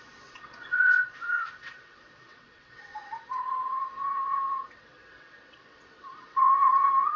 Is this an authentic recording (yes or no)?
no